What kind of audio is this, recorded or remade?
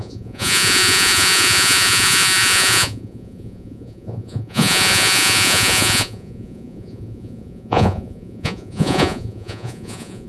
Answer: remade